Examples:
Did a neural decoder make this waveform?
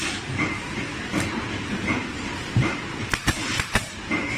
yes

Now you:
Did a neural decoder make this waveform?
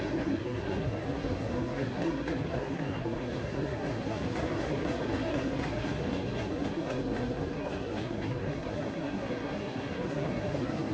yes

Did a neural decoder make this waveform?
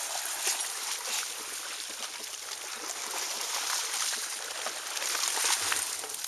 no